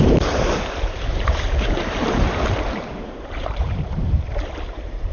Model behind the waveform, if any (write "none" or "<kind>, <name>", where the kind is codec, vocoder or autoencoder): vocoder, BigVGAN v2